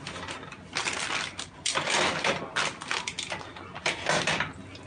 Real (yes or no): yes